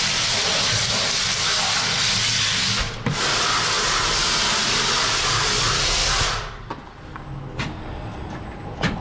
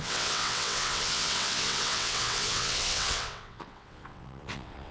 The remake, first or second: second